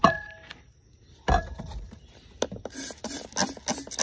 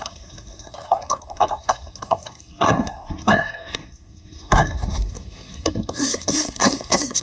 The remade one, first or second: second